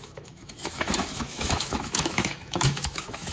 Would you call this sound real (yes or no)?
no